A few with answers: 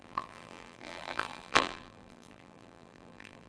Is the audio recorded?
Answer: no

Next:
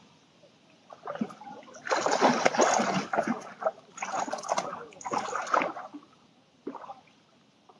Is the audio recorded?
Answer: yes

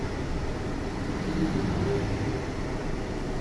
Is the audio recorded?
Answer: yes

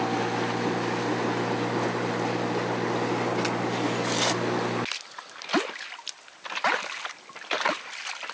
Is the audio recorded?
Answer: yes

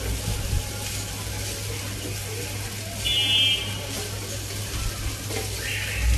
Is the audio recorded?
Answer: yes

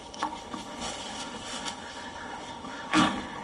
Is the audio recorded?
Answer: no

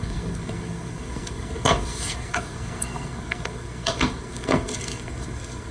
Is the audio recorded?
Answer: no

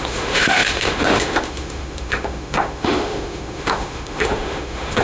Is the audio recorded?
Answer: no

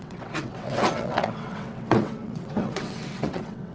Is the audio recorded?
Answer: no